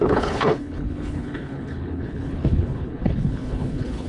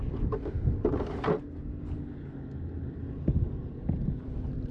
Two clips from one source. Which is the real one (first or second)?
second